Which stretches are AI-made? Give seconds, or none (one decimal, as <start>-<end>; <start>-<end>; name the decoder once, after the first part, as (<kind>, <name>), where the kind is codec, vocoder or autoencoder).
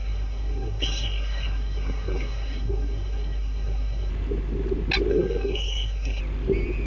0.0-4.1 (codec, SNAC); 5.1-6.2